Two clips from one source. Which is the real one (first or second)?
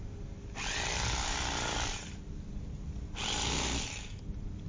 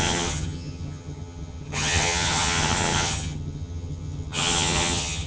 first